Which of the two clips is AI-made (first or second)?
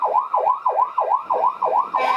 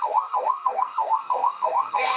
second